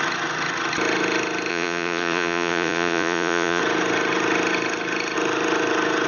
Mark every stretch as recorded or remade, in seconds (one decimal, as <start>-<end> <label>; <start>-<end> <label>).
0.0-1.5 recorded; 1.5-3.6 remade; 3.6-6.1 recorded